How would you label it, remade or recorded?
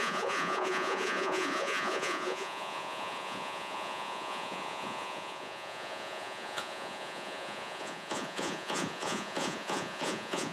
remade